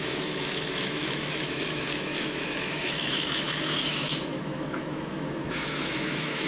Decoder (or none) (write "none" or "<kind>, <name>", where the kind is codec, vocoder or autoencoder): autoencoder, DAC-VAE